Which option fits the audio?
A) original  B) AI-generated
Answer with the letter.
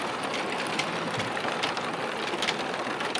A